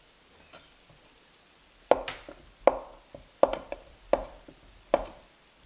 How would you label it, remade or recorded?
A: recorded